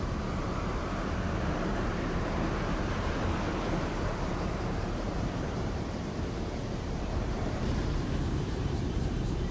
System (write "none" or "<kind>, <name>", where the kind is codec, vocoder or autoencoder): vocoder, BigVGAN v2